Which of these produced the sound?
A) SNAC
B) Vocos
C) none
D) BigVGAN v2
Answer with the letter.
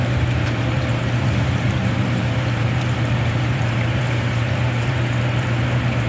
D